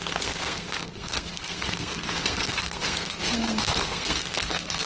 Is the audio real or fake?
fake